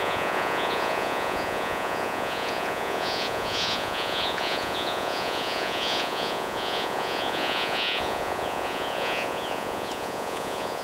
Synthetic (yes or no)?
yes